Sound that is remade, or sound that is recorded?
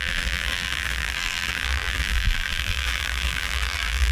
remade